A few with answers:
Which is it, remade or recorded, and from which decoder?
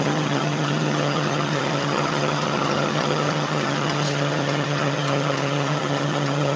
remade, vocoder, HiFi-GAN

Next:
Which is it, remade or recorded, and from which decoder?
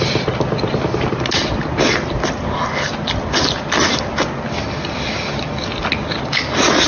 recorded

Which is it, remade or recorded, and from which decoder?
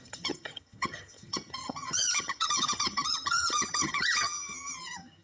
remade, vocoder, HiFi-GAN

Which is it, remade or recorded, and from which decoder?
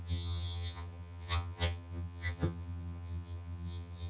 remade, vocoder, HiFi-GAN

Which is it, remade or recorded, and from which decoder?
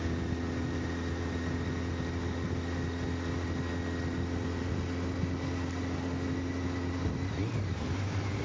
recorded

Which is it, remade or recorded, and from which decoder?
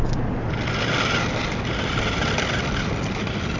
recorded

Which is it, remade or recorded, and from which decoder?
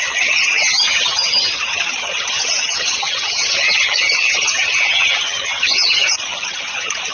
remade, vocoder, HiFi-GAN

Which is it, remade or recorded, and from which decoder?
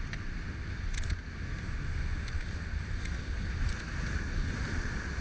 recorded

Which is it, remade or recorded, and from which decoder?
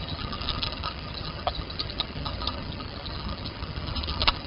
remade, vocoder, HiFi-GAN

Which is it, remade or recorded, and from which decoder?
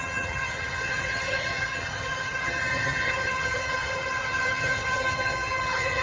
remade, vocoder, HiFi-GAN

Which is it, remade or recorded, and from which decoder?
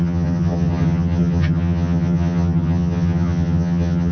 remade, vocoder, HiFi-GAN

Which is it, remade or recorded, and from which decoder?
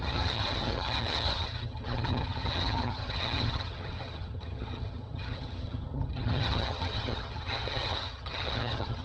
remade, vocoder, HiFi-GAN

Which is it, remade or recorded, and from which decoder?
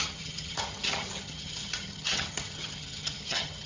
remade, vocoder, HiFi-GAN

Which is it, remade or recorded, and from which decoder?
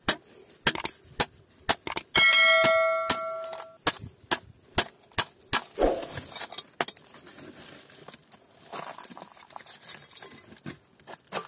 recorded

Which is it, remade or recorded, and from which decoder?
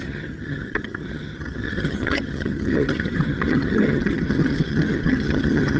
remade, vocoder, HiFi-GAN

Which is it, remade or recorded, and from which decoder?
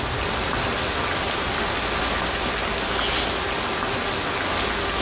recorded